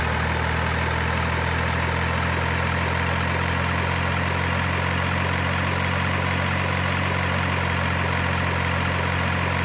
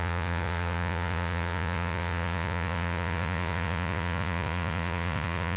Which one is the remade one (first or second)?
second